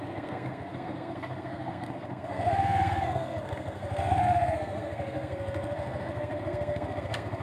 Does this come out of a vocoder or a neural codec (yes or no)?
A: yes